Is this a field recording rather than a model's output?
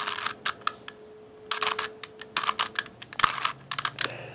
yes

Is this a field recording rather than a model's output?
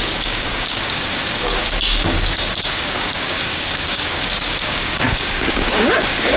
no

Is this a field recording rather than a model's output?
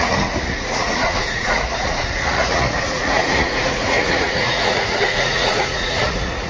no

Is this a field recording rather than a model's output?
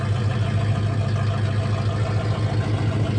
yes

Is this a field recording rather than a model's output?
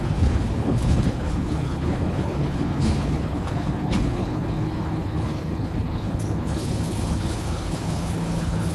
no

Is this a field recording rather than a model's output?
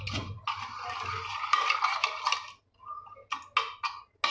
yes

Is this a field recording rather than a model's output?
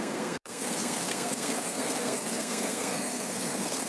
no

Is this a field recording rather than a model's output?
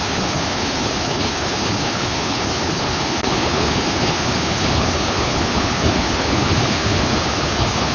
no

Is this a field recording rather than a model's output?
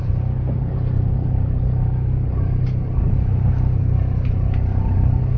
yes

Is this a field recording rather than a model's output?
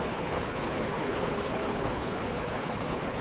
no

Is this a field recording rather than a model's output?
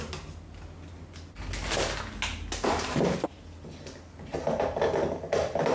yes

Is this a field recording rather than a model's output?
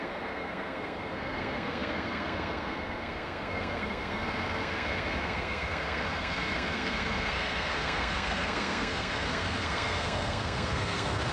no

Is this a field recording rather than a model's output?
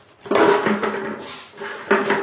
yes